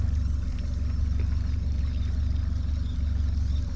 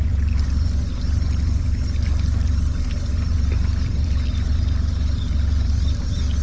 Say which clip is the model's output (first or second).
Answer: second